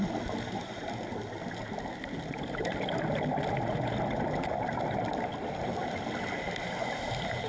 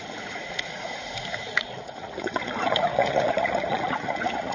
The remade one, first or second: second